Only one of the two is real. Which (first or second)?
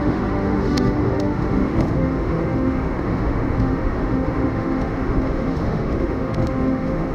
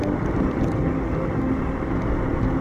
second